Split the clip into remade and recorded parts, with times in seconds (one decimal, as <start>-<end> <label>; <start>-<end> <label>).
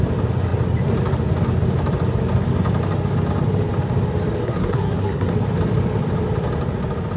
0.0-4.4 recorded; 4.4-5.3 remade; 5.3-7.2 recorded